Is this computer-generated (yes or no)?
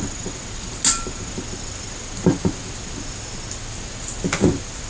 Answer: no